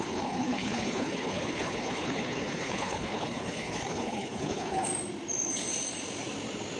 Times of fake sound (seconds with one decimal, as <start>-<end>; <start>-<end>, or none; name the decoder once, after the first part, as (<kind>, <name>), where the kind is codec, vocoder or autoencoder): 0.0-4.9 (codec, HILCodec)